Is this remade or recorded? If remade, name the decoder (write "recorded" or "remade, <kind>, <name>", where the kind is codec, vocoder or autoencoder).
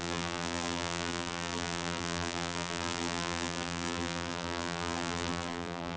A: remade, vocoder, BigVGAN v2